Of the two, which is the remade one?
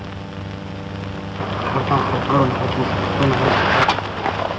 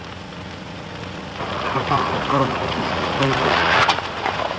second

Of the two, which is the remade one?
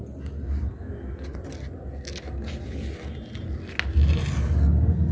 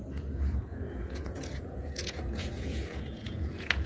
second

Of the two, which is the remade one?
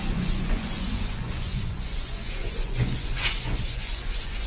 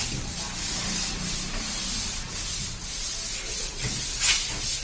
first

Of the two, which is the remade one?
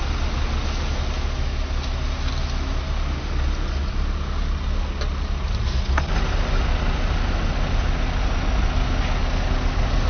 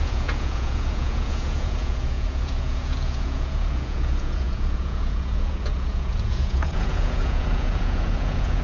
second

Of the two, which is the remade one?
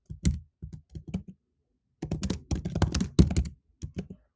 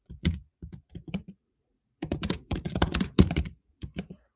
second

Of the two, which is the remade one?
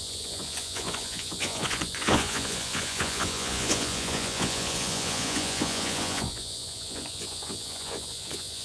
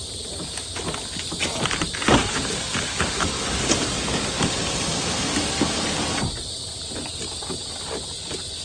first